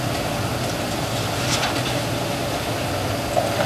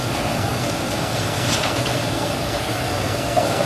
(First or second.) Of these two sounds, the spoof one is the second